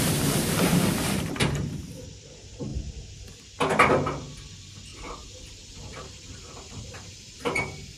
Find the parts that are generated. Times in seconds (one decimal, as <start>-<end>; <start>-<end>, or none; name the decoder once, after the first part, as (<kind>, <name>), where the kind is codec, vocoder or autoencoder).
0.0-2.7 (vocoder, BigVGAN v2); 4.5-4.9; 5.4-8.0